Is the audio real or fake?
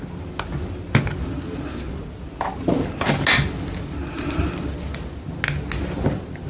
real